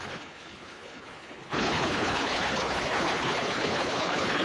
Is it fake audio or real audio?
fake